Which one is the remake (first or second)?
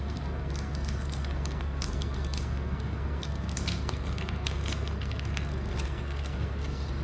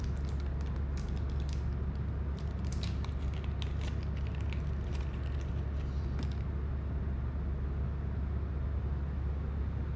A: first